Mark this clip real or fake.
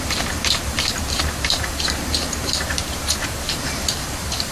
fake